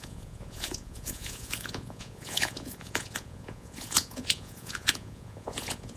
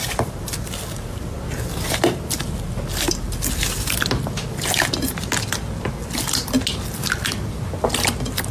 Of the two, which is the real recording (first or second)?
second